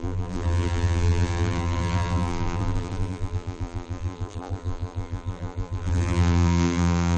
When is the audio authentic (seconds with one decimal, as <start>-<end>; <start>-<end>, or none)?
none